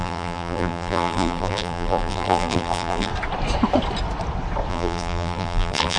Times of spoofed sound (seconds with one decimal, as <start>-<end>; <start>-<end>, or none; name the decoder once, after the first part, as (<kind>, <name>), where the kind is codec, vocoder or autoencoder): 0.0-3.1 (vocoder, BigVGAN v2); 4.7-6.0